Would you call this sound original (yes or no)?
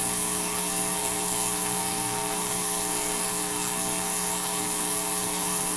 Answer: no